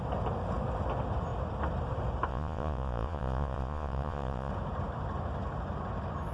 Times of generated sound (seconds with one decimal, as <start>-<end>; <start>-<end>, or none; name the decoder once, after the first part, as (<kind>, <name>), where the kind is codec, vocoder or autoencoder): 2.3-4.5 (vocoder, Vocos)